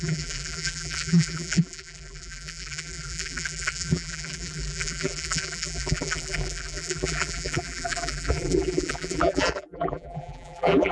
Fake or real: fake